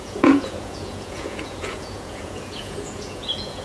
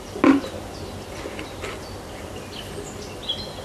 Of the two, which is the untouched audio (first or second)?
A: second